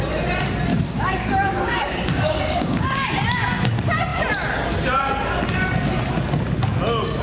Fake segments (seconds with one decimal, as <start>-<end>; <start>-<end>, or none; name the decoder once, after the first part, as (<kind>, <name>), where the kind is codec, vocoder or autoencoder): 0.7-3.1 (codec, DAC)